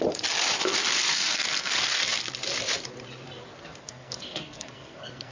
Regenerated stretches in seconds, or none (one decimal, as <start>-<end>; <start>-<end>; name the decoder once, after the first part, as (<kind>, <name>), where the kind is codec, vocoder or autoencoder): 1.1-1.7 (codec, SNAC); 3.8-5.3